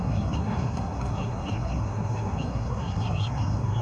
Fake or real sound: fake